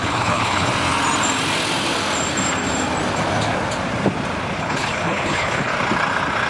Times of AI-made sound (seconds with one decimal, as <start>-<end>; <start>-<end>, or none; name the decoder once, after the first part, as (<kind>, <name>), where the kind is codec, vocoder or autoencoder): 0.0-0.7 (codec, HILCodec); 4.6-5.7

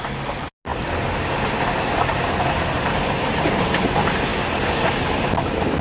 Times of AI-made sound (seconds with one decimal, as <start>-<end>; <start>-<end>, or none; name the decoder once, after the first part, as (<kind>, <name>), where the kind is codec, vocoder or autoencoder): none

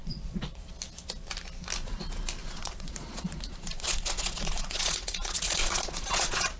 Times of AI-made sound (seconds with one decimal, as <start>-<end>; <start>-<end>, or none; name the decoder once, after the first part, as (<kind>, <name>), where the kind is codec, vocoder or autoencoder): 0.0-0.6 (vocoder, Vocos); 2.4-6.6